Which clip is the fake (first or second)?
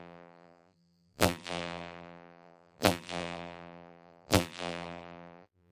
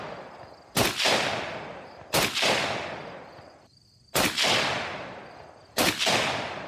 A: first